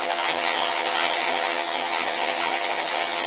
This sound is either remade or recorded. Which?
remade